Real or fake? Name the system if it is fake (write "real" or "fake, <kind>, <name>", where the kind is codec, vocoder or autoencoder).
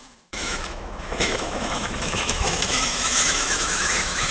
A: fake, autoencoder, DAC-VAE